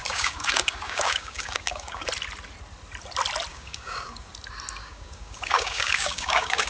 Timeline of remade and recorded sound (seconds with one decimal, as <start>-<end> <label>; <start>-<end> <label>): 0.0-2.1 remade; 2.1-3.5 recorded; 3.5-4.3 remade; 4.3-4.8 recorded; 4.8-6.7 remade